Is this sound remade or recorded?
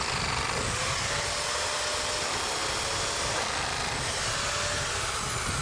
recorded